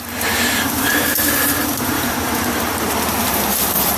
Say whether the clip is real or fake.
fake